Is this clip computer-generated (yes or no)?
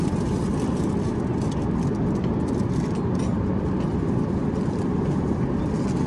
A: no